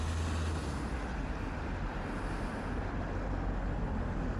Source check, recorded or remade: recorded